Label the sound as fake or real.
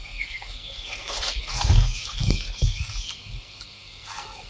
fake